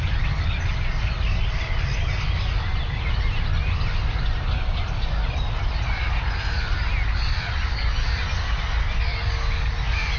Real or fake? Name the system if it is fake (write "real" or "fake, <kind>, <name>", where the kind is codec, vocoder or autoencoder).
real